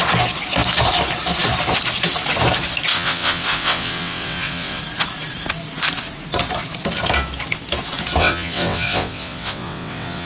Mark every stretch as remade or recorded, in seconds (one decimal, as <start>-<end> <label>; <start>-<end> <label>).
0.0-2.9 recorded; 2.9-4.8 remade; 4.8-8.2 recorded; 8.2-10.3 remade